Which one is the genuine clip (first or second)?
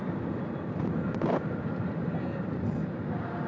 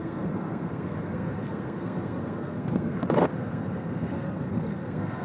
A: first